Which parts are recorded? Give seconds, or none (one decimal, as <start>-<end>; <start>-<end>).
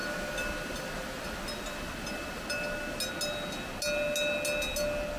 0.0-5.2